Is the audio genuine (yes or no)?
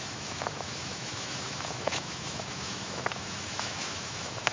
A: no